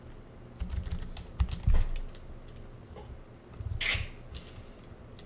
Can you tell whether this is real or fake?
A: real